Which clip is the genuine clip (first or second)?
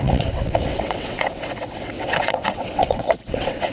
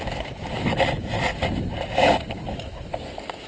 second